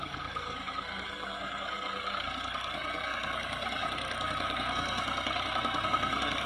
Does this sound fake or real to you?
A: fake